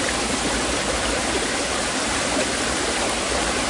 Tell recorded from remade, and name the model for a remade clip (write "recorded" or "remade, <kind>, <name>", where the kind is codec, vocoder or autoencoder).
recorded